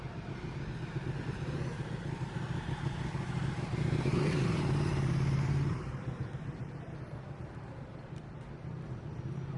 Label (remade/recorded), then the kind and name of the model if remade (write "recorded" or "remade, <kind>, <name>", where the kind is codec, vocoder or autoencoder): remade, vocoder, BigVGAN v2